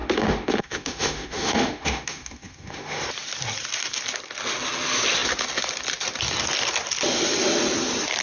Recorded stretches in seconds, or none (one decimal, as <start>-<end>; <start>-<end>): 3.0-8.2